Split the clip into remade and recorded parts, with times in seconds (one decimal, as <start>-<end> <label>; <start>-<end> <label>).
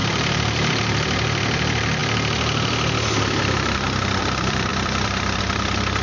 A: 0.0-2.0 remade; 2.0-4.2 recorded; 4.2-6.0 remade